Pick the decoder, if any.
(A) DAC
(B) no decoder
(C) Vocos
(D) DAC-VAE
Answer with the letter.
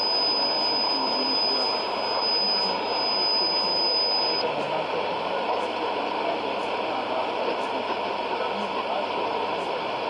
B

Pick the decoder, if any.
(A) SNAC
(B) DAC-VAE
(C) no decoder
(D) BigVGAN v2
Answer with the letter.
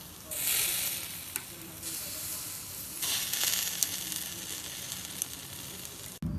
C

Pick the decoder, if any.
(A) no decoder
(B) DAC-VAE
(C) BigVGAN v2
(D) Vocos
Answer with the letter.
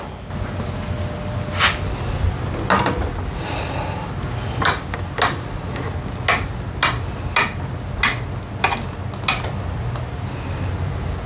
A